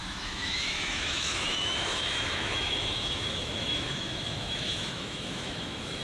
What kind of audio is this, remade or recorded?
remade